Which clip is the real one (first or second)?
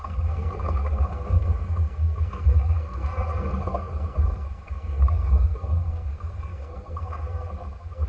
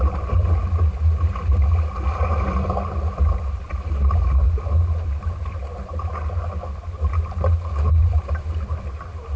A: second